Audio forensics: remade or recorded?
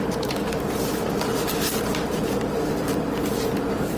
remade